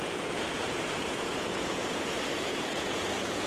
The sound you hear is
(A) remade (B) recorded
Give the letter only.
A